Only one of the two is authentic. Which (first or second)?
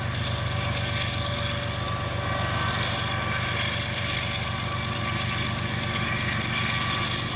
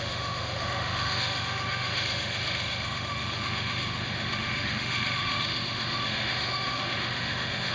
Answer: first